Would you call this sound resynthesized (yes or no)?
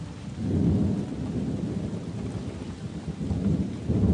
no